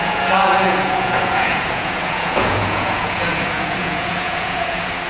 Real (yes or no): no